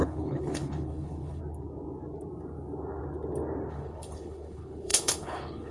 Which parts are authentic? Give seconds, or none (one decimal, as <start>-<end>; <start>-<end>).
1.4-3.7